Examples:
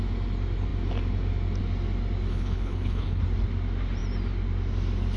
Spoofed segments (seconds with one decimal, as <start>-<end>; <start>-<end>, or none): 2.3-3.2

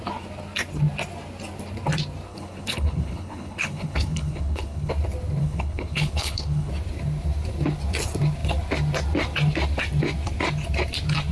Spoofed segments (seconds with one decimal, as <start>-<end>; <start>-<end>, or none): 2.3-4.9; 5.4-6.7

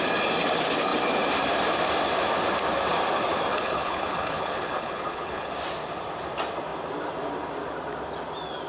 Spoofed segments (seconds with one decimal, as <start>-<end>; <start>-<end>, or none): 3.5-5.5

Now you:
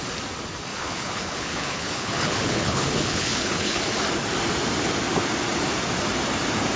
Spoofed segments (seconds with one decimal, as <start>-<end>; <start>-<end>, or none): 0.7-3.8

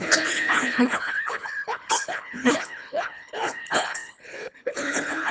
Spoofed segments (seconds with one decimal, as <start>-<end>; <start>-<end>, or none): 0.0-5.3

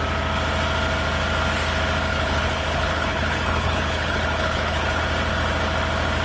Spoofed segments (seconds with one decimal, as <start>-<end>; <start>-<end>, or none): 2.1-5.0